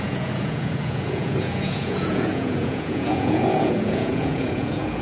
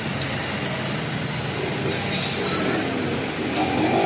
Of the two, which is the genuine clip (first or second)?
second